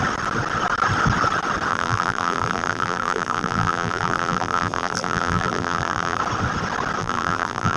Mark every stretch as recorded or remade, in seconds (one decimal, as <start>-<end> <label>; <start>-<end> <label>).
0.0-1.7 recorded; 1.7-6.2 remade; 6.2-7.0 recorded; 7.0-7.8 remade